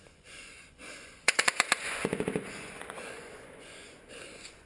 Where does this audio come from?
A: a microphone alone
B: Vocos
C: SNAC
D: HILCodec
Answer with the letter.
B